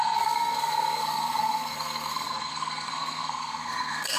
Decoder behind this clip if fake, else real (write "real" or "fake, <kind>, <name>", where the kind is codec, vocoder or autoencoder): fake, codec, SNAC